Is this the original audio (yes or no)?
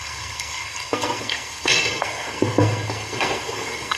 no